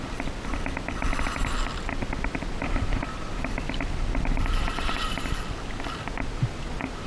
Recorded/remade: recorded